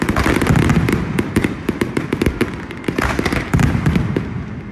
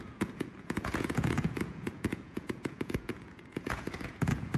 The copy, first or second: second